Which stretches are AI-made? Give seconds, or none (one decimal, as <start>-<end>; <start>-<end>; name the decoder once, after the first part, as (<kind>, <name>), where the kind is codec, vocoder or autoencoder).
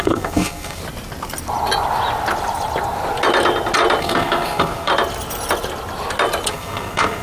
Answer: 0.0-0.8 (codec, SNAC); 4.0-4.9; 6.5-7.2